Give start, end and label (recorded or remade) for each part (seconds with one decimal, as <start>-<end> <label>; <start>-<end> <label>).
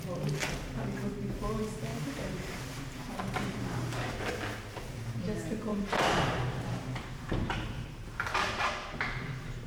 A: 0.0-1.9 recorded; 1.9-4.3 remade; 4.3-5.7 recorded; 5.7-7.0 remade; 7.0-9.7 recorded